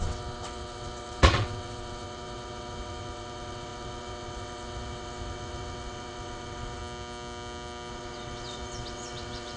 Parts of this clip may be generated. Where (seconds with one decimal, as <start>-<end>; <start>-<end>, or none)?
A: 0.0-6.8; 7.9-9.6